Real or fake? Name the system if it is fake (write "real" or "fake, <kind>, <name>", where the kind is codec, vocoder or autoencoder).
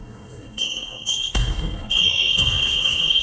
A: fake, codec, SNAC